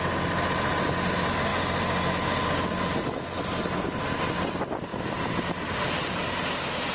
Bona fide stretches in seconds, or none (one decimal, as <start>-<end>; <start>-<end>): 0.0-6.9